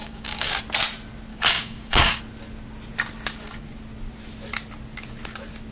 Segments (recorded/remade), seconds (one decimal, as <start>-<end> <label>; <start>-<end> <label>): 0.0-0.6 remade; 0.6-1.3 recorded; 1.3-2.2 remade; 2.2-5.7 recorded